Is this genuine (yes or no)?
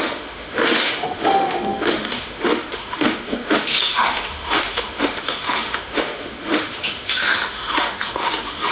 no